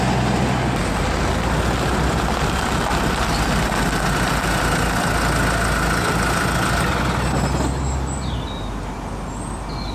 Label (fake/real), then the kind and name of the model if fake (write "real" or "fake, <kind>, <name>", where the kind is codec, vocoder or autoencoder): real